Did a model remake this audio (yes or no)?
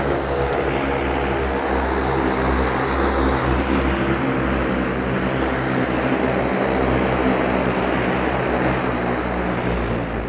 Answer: no